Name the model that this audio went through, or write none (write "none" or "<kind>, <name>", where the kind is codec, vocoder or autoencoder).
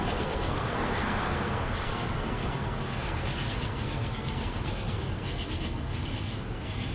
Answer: codec, SNAC